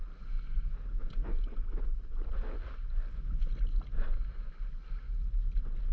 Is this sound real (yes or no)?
yes